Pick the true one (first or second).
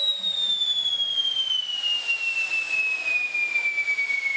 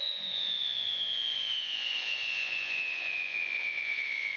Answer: first